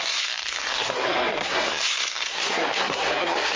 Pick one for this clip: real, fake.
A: fake